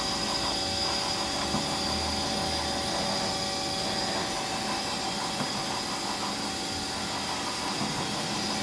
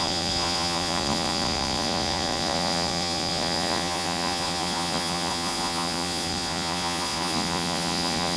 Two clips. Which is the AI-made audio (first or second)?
second